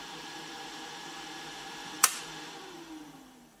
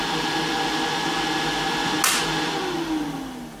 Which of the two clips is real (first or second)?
second